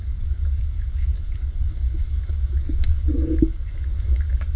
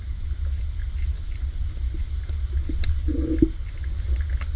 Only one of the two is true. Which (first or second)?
second